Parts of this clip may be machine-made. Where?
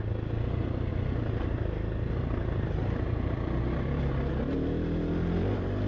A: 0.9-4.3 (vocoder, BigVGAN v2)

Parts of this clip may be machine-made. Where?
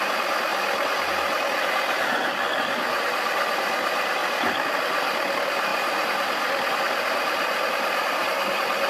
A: 0.0-0.5 (vocoder, BigVGAN v2); 2.9-8.2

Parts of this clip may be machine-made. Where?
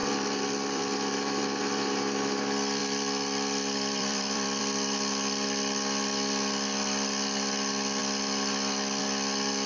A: 0.0-1.6 (vocoder, BigVGAN v2); 2.8-4.6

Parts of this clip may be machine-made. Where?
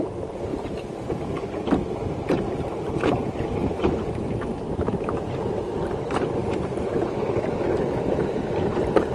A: 0.0-0.5 (vocoder, BigVGAN v2); 1.0-4.5; 5.5-6.4; 8.7-9.1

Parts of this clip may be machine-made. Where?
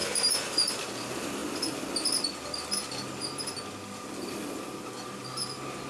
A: 0.0-0.9 (vocoder, BigVGAN v2)